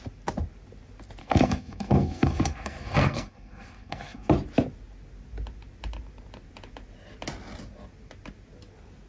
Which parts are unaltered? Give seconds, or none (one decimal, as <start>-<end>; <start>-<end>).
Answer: 0.0-1.2; 4.3-9.1